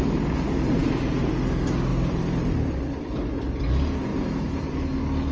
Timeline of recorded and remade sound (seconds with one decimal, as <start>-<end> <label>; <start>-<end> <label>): 0.0-0.8 recorded; 0.8-1.3 remade; 1.3-1.9 recorded; 1.9-3.0 remade; 3.0-4.1 recorded; 4.1-5.3 remade